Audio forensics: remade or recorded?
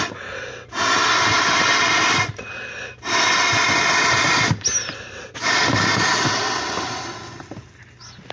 recorded